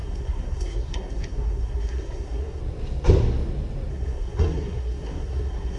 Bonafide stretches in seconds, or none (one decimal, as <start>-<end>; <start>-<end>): 2.6-3.9